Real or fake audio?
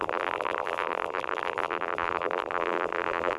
fake